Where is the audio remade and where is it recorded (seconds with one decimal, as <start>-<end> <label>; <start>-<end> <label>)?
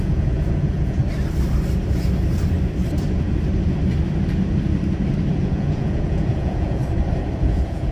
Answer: 0.0-1.0 remade; 1.0-5.4 recorded; 5.4-6.8 remade; 6.8-7.4 recorded; 7.4-7.9 remade